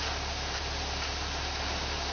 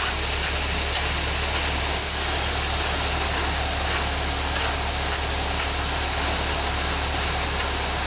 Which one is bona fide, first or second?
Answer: second